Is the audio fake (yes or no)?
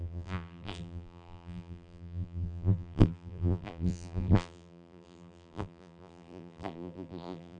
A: yes